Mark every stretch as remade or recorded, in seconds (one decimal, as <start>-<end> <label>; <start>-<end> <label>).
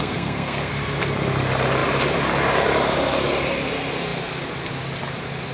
0.0-0.7 remade; 0.7-5.5 recorded